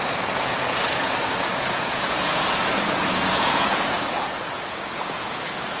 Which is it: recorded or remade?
remade